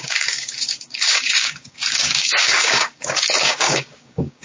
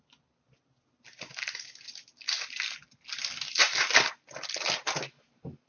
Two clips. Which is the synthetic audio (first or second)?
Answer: first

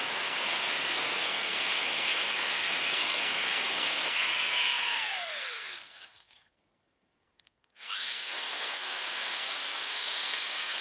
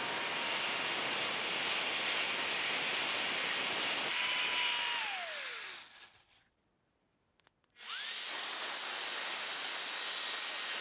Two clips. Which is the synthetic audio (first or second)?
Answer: first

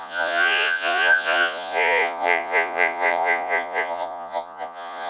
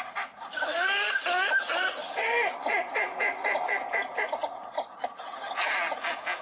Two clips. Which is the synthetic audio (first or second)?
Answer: first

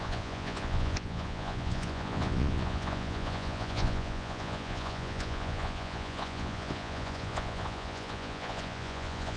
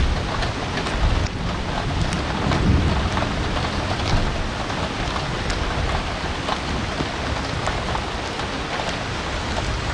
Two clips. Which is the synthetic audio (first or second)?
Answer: first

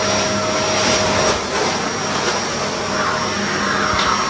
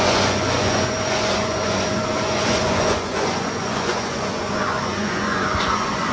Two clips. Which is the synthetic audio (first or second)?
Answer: second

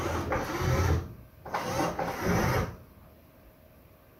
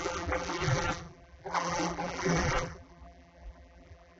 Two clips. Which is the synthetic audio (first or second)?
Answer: second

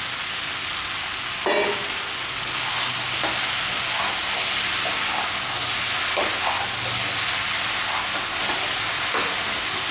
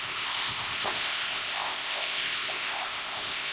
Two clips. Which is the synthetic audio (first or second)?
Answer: second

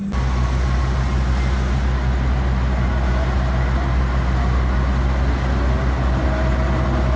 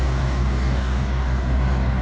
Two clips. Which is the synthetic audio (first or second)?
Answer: second